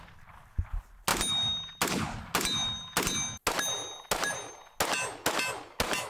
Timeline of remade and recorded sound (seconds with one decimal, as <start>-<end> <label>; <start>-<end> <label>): 0.0-6.1 recorded